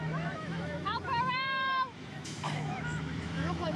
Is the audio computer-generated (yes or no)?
yes